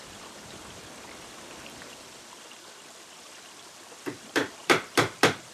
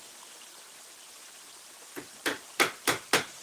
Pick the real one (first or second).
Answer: second